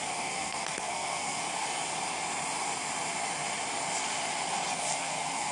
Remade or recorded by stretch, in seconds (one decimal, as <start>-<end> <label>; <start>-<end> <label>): 0.0-1.4 remade; 1.4-4.7 recorded; 4.7-5.5 remade

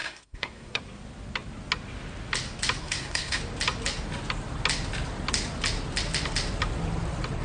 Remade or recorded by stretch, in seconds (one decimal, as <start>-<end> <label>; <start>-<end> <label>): 0.0-0.8 remade; 0.8-2.8 recorded; 2.8-3.4 remade; 3.4-7.4 recorded

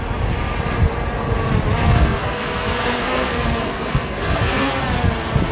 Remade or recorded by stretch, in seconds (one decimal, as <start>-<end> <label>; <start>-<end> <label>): 0.0-1.8 recorded; 1.8-4.8 remade; 4.8-5.5 recorded

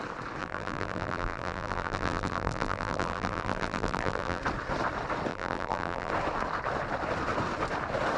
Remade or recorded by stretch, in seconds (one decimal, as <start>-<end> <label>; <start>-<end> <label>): 0.0-0.4 recorded; 0.4-4.4 remade; 4.4-5.3 recorded; 5.3-6.1 remade; 6.1-8.2 recorded

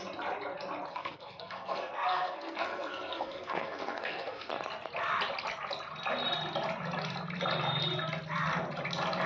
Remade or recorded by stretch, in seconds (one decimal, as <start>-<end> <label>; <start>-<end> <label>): 0.0-0.9 recorded; 0.9-4.5 remade; 4.5-9.3 recorded

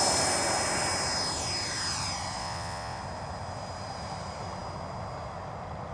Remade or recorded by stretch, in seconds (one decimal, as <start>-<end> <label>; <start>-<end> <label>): 0.0-2.4 recorded; 2.4-3.0 remade; 3.0-5.9 recorded